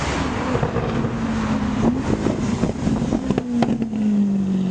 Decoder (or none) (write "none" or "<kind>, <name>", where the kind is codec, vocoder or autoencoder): none